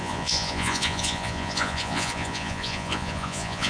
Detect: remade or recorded remade